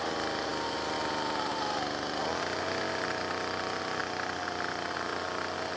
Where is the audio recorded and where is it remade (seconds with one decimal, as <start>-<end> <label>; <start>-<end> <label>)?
0.0-5.8 recorded